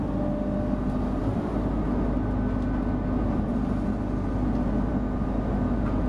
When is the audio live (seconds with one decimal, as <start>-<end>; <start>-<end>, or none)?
0.0-6.1